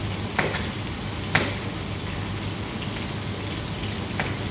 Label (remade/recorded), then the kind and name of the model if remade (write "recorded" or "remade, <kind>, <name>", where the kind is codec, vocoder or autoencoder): recorded